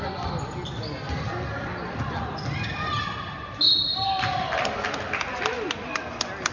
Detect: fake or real real